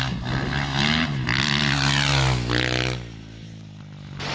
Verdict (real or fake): real